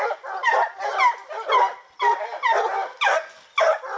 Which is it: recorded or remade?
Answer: recorded